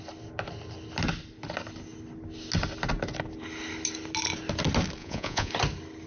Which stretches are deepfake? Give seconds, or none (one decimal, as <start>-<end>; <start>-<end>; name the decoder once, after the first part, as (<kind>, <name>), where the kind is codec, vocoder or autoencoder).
5.0-5.5 (vocoder, Vocos)